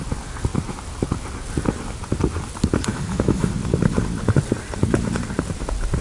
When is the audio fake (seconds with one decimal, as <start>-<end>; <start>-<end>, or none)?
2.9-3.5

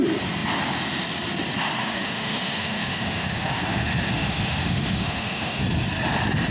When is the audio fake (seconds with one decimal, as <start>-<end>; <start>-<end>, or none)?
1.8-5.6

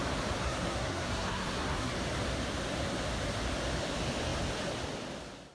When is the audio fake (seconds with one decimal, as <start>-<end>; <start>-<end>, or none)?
0.4-1.9

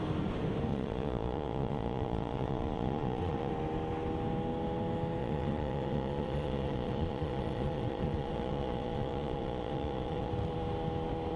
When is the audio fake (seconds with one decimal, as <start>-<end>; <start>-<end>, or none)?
0.7-3.5; 5.2-10.3